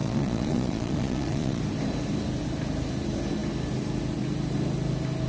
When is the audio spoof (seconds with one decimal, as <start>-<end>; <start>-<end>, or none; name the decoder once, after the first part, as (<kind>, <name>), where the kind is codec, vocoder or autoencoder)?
0.0-1.6 (vocoder, Vocos)